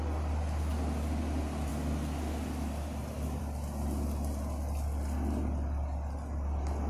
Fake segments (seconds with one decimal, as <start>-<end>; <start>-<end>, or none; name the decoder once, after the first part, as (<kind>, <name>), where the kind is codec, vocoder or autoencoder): none